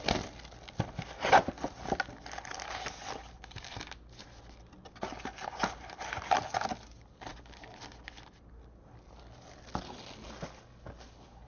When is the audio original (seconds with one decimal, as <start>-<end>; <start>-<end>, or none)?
0.0-11.5